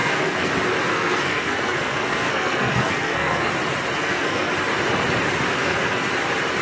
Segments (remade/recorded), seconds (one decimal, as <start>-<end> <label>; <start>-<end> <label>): 0.0-0.5 remade; 0.5-0.9 recorded; 0.9-3.5 remade; 3.5-4.0 recorded; 4.0-4.5 remade; 4.5-5.5 recorded; 5.5-6.1 remade; 6.1-6.6 recorded